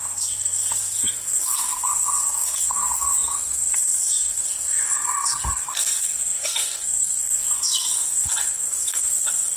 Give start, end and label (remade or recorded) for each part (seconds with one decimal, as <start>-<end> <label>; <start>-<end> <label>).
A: 0.0-9.6 remade